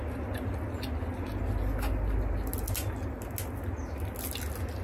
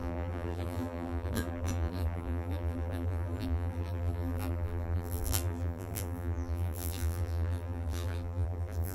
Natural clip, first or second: first